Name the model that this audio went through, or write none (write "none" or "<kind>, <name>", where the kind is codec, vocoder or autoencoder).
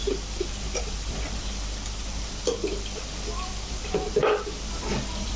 vocoder, BigVGAN v2